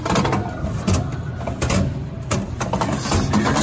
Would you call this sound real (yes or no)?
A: yes